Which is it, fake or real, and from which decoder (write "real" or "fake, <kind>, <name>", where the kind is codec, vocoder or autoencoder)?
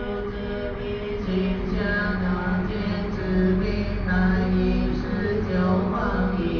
real